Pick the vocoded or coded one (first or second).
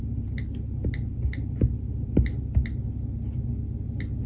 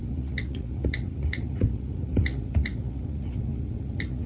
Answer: second